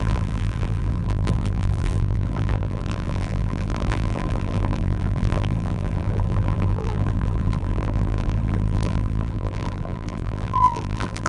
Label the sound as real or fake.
fake